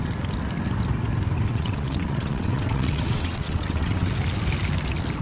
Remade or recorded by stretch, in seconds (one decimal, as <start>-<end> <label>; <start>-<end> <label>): 0.0-1.5 recorded; 1.5-4.1 remade; 4.1-5.2 recorded